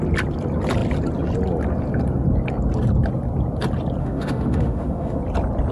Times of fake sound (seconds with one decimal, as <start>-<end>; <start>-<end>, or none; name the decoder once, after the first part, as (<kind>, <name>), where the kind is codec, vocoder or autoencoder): 4.0-5.2 (autoencoder, DAC-VAE)